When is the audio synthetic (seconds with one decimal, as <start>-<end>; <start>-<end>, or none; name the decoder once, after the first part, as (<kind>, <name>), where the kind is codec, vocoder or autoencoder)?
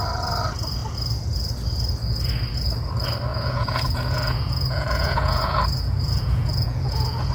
3.3-7.3 (vocoder, Vocos)